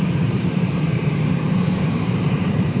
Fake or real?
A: fake